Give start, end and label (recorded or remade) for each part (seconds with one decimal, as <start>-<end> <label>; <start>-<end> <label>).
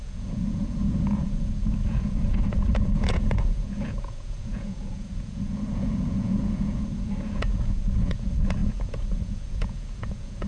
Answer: 0.0-10.5 remade